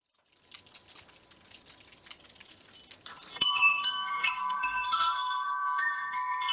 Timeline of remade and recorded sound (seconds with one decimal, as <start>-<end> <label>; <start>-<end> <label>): 0.0-3.3 recorded; 3.3-6.5 remade